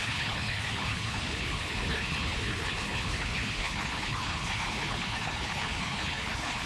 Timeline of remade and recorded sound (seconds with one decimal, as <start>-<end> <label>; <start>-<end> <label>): 0.0-6.7 remade

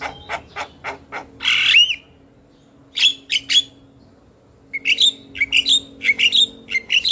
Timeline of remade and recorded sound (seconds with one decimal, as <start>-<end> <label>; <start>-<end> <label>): 0.0-7.1 recorded

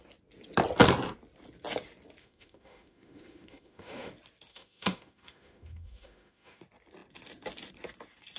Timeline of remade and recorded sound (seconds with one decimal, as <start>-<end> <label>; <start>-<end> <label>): 0.0-2.2 recorded; 2.2-4.1 remade; 4.1-4.5 recorded; 4.5-6.6 remade; 6.6-8.4 recorded